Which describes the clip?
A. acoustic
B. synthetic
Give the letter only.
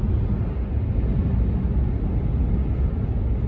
A